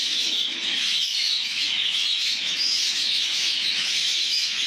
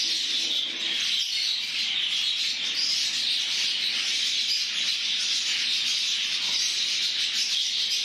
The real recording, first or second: second